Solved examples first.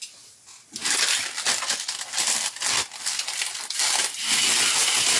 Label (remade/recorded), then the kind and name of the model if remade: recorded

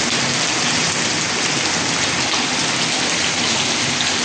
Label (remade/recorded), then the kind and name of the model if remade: recorded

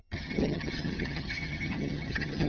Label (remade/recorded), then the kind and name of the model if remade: remade, vocoder, HiFi-GAN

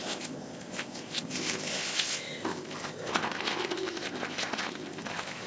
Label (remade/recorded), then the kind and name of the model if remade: remade, codec, ZipCodec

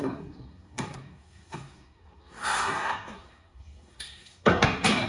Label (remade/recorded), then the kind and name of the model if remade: remade, codec, SNAC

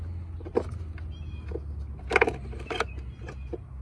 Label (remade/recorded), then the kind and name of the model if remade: recorded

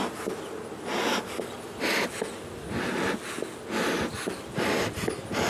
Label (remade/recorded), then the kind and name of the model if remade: recorded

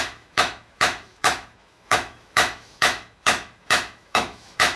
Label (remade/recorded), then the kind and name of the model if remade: remade, autoencoder, DAC-VAE